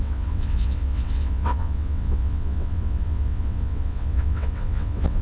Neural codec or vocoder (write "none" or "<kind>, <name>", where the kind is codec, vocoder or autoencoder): vocoder, WaveNeXt